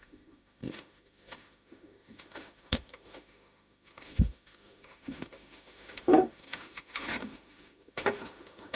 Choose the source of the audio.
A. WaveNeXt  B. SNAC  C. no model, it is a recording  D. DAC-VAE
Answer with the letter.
D